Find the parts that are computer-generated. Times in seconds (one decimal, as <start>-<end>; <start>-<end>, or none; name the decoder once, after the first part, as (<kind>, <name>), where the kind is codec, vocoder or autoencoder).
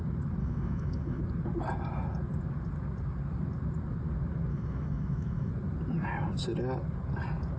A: 0.4-1.2 (autoencoder, DAC-VAE); 4.5-5.5